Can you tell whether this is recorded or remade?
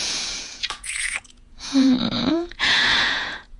remade